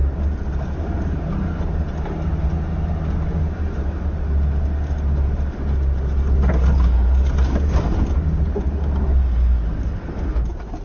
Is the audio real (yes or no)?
yes